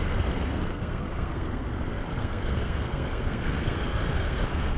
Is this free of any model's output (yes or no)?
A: no